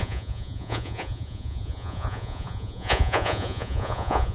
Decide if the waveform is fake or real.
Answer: fake